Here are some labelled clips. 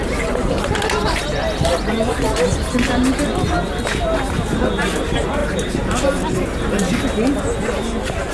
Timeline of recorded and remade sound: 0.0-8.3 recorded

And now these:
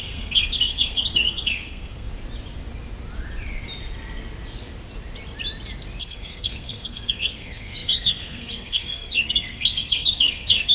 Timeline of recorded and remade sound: 0.0-2.1 remade; 2.1-6.0 recorded; 6.0-10.7 remade

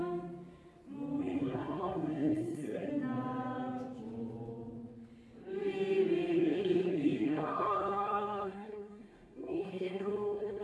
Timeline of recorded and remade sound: 0.0-1.2 recorded; 1.2-2.9 remade; 2.9-6.3 recorded; 6.3-10.6 remade

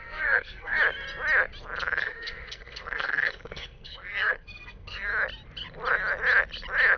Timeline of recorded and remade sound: 0.0-0.8 remade; 0.8-2.0 recorded; 2.0-5.1 remade; 5.1-7.0 recorded

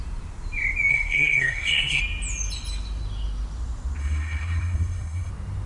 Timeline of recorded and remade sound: 0.0-0.9 recorded; 0.9-2.0 remade; 2.0-4.0 recorded; 4.0-5.3 remade; 5.3-5.7 recorded

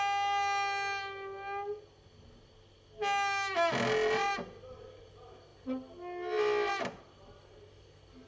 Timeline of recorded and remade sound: 0.0-8.3 recorded

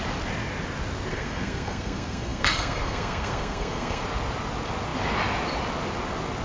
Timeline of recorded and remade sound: 0.0-1.1 recorded; 1.1-4.0 remade; 4.0-6.4 recorded